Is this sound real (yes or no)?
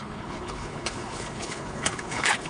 no